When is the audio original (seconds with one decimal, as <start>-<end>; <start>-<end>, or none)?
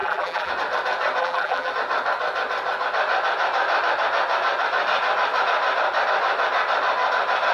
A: 0.5-1.2; 1.7-7.5